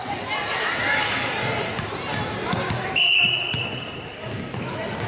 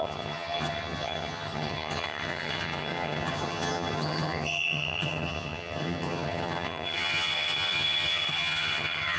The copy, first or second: second